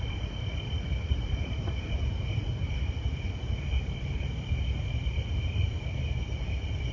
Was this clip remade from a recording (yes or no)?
no